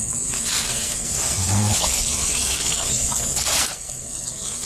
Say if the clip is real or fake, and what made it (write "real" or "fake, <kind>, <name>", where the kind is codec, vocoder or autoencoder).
fake, codec, SNAC